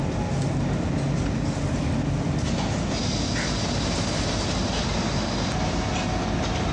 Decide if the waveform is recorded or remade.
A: recorded